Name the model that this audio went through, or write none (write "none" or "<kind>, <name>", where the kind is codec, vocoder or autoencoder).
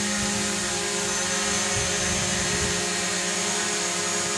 none